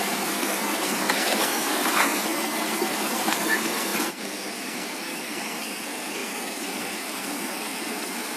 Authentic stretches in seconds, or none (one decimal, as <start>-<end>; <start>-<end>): none